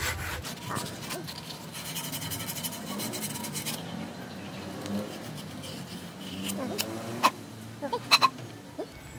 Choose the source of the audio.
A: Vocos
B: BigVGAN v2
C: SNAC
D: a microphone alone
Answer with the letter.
D